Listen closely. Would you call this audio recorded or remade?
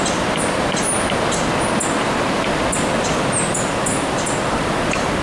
recorded